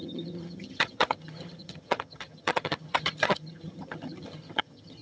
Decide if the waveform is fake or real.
fake